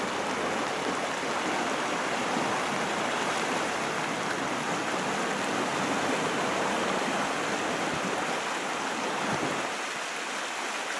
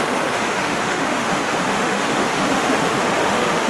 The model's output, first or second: second